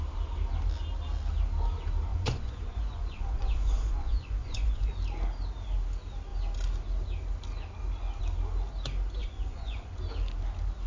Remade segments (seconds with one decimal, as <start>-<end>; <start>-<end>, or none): 2.1-4.9; 9.2-10.0